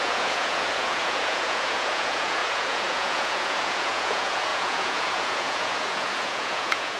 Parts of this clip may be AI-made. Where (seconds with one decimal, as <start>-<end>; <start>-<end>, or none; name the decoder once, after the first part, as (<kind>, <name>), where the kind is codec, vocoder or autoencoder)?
0.0-7.0 (vocoder, Vocos)